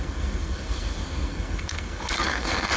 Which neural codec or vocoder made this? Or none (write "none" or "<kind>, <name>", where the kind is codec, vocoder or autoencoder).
codec, SNAC